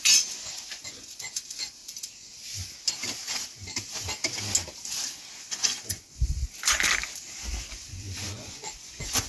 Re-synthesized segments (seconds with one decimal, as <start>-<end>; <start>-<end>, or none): 0.0-1.8; 5.4-6.4; 7.7-9.3